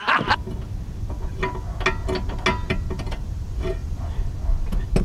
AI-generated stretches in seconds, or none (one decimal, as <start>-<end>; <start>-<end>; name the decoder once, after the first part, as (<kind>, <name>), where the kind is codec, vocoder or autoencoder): none